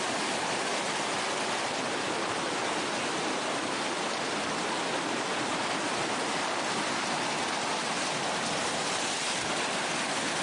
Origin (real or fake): real